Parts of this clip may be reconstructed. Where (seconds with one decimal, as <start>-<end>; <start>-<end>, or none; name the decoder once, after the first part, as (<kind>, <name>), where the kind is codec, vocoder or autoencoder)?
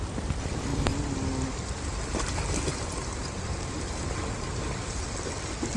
none